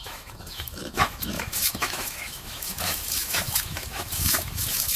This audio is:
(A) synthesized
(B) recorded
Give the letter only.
A